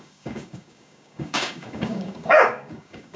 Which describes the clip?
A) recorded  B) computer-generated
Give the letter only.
B